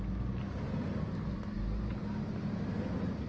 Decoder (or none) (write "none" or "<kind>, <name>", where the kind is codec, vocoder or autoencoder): none